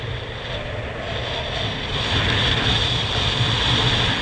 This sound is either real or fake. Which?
real